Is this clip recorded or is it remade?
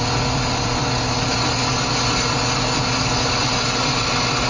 recorded